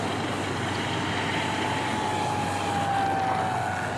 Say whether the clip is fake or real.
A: real